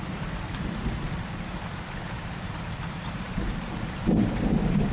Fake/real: fake